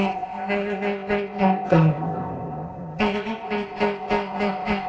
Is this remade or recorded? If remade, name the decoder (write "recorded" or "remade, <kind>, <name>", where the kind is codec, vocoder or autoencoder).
remade, codec, ZipCodec